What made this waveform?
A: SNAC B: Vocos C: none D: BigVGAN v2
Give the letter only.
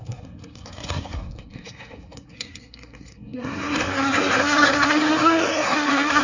A